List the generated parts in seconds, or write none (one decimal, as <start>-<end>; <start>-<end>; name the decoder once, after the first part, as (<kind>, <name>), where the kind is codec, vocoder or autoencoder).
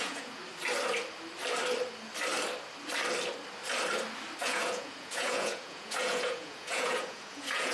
0.0-0.4 (vocoder, Vocos); 4.4-7.7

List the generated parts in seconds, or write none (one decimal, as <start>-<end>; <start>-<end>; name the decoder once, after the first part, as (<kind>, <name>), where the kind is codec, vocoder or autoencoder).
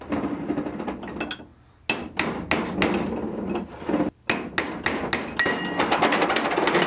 none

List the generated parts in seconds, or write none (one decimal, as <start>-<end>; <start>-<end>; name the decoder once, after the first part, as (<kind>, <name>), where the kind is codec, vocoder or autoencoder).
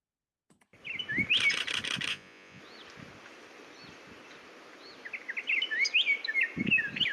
2.1-2.6 (vocoder, Vocos)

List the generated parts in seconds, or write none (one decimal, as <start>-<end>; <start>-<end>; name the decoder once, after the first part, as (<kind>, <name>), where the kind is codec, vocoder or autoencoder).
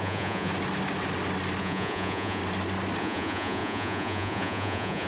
0.0-0.5 (vocoder, Vocos); 1.6-2.4; 3.0-5.1